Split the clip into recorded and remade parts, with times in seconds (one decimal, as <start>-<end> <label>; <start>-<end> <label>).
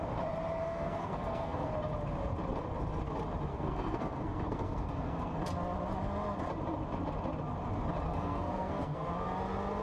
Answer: 0.0-0.6 recorded; 0.6-1.7 remade; 1.7-3.5 recorded; 3.5-5.4 remade; 5.4-8.1 recorded; 8.1-9.1 remade; 9.1-9.8 recorded